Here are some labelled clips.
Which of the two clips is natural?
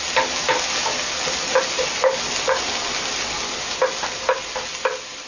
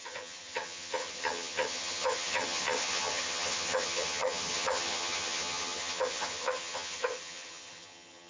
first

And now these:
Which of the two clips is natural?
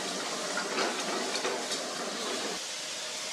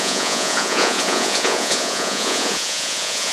first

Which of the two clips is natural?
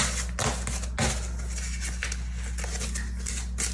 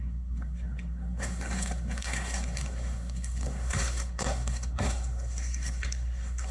first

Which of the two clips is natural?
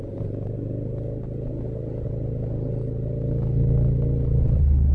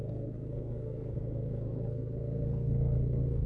first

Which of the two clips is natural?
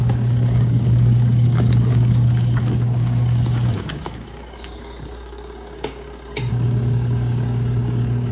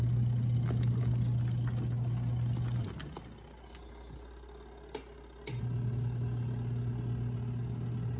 second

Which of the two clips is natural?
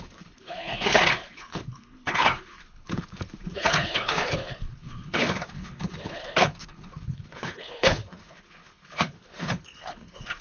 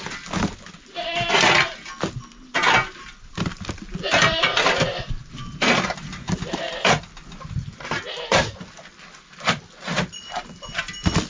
second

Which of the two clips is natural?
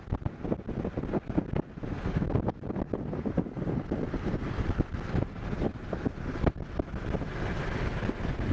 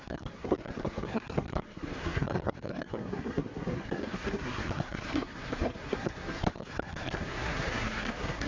first